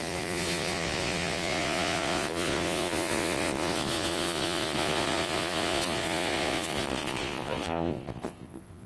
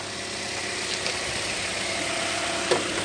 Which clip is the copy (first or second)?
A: first